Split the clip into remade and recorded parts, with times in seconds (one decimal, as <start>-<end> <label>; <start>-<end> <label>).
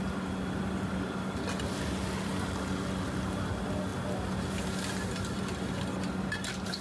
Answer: 0.0-6.8 recorded